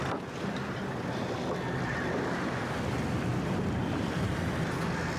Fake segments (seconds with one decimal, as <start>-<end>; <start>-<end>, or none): 3.3-4.3